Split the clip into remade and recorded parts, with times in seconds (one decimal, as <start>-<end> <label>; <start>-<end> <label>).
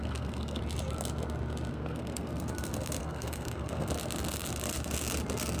0.0-0.6 remade; 0.6-1.7 recorded; 1.7-2.3 remade; 2.3-3.0 recorded; 3.0-3.9 remade; 3.9-5.6 recorded